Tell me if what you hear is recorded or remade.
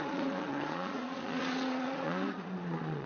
remade